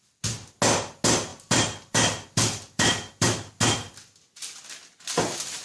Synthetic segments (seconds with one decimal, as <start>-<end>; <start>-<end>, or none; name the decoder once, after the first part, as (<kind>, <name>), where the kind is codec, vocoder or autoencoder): 1.3-3.5 (vocoder, BigVGAN v2)